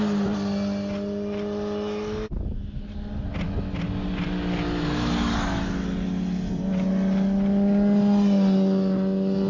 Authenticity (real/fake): real